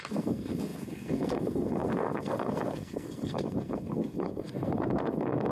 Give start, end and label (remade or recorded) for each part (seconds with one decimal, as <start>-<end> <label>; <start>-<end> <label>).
0.0-5.5 remade